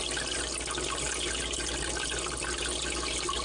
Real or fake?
real